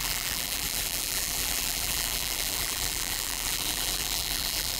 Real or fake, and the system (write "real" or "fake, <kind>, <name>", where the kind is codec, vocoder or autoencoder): fake, vocoder, BigVGAN v2